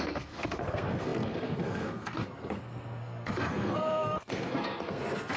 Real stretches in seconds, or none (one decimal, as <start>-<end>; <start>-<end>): none